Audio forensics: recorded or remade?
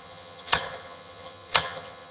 remade